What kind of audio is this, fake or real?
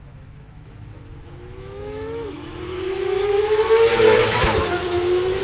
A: fake